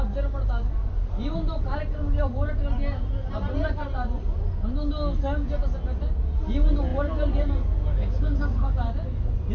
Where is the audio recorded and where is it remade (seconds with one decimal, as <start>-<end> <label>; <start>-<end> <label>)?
0.0-7.9 recorded; 7.9-8.9 remade; 8.9-9.5 recorded

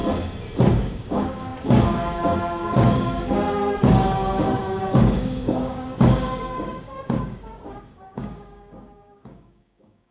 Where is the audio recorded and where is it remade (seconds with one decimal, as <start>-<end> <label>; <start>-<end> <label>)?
0.0-0.7 recorded; 0.7-10.1 remade

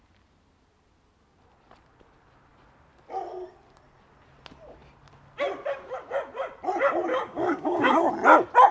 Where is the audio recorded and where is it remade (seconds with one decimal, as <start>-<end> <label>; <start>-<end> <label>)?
0.0-7.1 recorded; 7.1-8.1 remade; 8.1-8.7 recorded

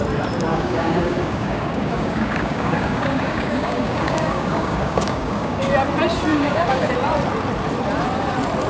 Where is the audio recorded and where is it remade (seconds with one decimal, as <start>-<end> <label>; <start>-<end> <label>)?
0.0-0.5 recorded; 0.5-5.7 remade; 5.7-6.3 recorded; 6.3-6.9 remade; 6.9-8.7 recorded

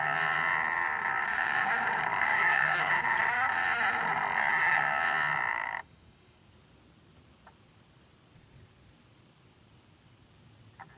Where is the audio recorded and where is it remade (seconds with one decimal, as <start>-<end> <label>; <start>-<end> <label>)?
0.0-1.3 recorded; 1.3-3.0 remade; 3.0-5.5 recorded; 5.5-6.4 remade; 6.4-11.0 recorded

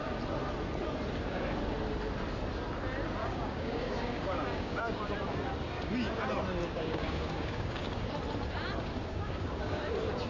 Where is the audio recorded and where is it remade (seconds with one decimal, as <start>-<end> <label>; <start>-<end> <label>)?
0.0-3.2 recorded; 3.2-5.0 remade; 5.0-6.6 recorded; 6.6-8.1 remade; 8.1-9.1 recorded; 9.1-9.8 remade; 9.8-10.3 recorded

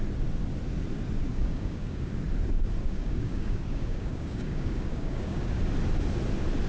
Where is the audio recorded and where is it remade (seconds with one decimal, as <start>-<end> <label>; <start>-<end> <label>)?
0.0-1.3 recorded; 1.3-2.1 remade; 2.1-2.8 recorded; 2.8-5.6 remade; 5.6-6.7 recorded